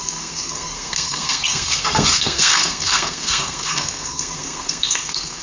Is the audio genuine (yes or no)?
no